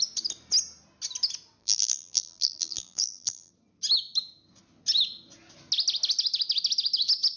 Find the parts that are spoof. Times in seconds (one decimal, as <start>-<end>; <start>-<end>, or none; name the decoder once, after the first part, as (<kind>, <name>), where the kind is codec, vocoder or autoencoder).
1.6-3.5 (vocoder, BigVGAN v2)